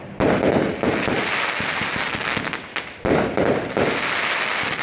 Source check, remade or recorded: recorded